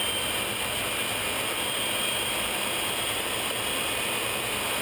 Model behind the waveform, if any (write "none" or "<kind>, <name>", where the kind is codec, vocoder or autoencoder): vocoder, BigVGAN v2